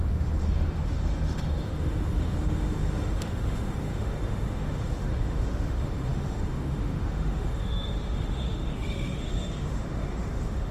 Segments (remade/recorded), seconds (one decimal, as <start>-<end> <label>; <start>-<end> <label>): 0.0-10.7 remade